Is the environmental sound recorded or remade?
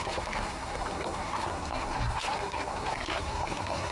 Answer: remade